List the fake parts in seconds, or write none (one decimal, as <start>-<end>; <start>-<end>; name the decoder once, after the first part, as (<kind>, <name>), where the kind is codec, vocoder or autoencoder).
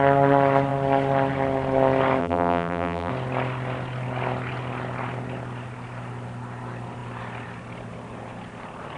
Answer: 2.2-3.1 (vocoder, BigVGAN v2)